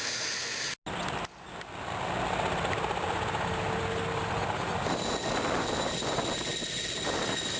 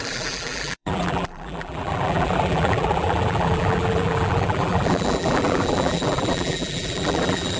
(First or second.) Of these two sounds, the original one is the first